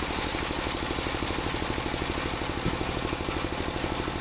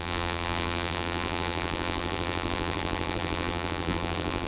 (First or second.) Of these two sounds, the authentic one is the first